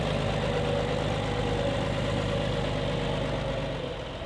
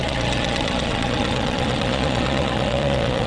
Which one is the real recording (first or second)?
first